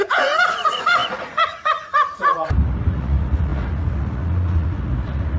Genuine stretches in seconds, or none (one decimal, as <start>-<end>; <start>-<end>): none